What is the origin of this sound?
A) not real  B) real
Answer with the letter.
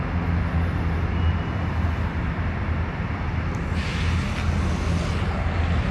B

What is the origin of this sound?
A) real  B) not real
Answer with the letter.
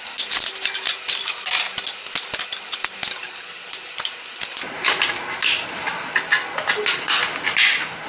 A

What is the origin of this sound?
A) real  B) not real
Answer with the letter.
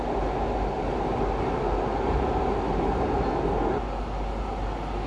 A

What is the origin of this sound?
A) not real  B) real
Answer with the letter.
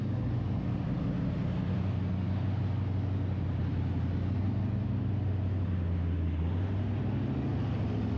B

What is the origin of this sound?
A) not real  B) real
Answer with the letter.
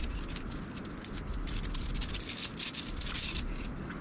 B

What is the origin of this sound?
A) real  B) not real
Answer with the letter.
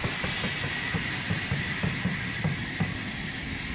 A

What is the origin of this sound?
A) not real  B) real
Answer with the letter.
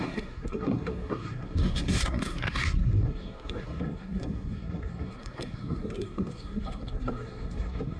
A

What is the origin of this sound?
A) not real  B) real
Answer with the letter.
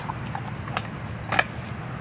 B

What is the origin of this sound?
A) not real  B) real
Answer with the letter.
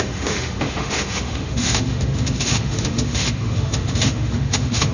A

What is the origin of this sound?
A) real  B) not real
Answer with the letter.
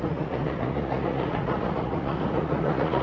B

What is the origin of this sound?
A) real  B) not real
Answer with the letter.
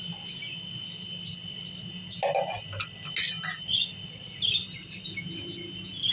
A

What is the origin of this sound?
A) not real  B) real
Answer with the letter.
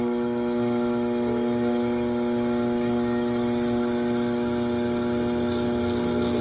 B